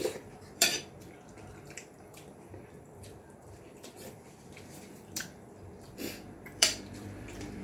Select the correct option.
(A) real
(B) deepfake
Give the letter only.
B